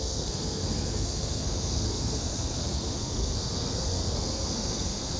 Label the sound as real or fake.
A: fake